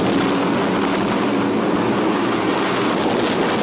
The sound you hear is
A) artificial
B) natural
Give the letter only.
B